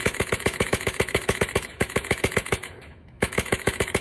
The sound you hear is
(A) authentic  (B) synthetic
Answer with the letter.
B